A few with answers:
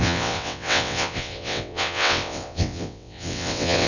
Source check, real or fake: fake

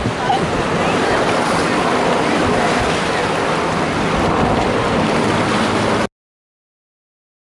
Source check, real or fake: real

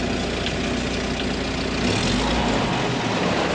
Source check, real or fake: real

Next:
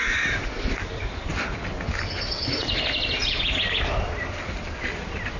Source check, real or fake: real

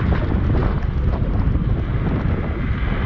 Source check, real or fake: real